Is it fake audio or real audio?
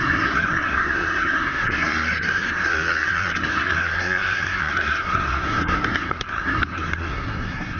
fake